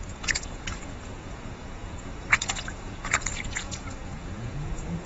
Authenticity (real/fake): fake